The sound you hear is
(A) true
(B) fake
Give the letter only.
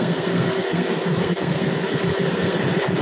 B